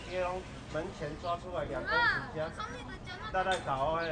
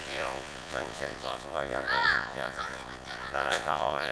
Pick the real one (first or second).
first